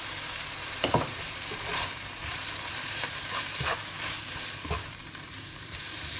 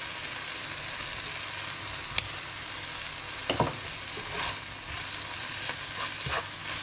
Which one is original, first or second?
second